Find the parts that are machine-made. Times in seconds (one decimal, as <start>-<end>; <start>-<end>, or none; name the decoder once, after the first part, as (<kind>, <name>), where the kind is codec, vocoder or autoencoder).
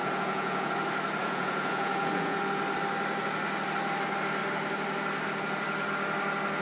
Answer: 0.0-0.7 (vocoder, Vocos); 1.2-2.4